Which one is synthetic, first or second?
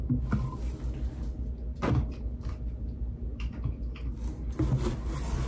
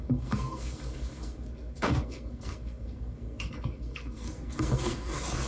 second